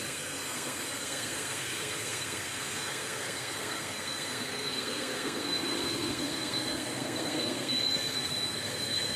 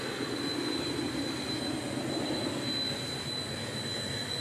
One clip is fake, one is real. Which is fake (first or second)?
first